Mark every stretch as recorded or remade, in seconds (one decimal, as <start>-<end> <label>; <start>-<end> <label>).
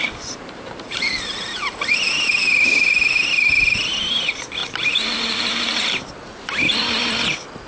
0.0-1.1 remade; 1.1-4.6 recorded; 4.6-6.1 remade; 6.1-7.7 recorded